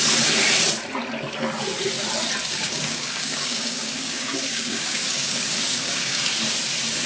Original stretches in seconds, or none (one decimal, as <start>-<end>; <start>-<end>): 0.0-2.5; 6.2-7.1